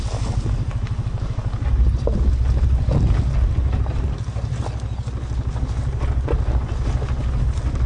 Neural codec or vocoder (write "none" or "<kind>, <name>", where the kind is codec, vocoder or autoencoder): none